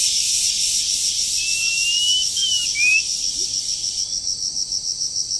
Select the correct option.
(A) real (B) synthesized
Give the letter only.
A